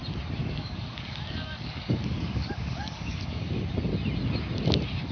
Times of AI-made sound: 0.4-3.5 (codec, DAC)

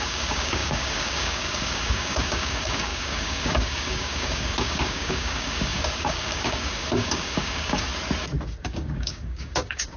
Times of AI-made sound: 0.0-7.9 (codec, DAC); 8.6-10.0

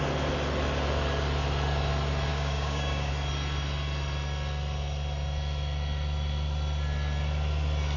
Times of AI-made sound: 2.3-3.1 (codec, DAC)